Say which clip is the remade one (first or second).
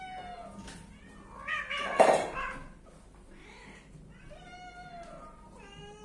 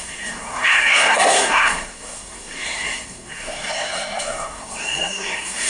second